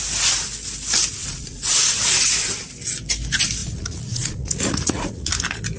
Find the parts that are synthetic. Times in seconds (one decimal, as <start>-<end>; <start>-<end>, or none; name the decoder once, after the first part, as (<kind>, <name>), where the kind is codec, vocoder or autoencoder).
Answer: 1.2-2.0 (vocoder, Vocos); 3.6-5.3